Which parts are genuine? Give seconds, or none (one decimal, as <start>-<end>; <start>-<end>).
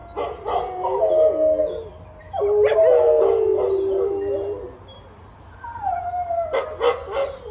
0.0-7.5